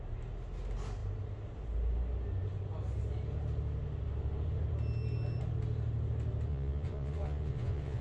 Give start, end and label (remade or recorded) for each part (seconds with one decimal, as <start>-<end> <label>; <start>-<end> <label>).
0.0-6.5 recorded; 6.5-8.0 remade